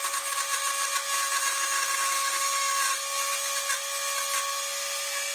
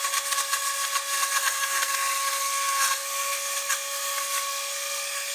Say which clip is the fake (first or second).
second